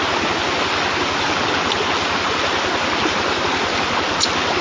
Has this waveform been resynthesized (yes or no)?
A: no